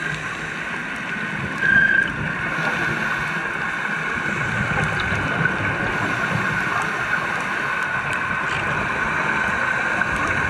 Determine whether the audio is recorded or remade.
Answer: recorded